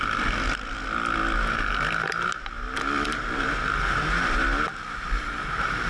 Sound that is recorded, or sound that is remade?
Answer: recorded